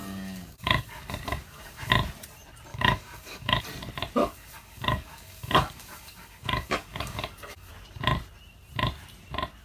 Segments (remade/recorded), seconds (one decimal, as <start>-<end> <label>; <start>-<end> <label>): 0.0-1.9 remade; 1.9-2.7 recorded; 2.7-3.6 remade; 3.6-4.2 recorded; 4.2-7.7 remade; 7.7-9.6 recorded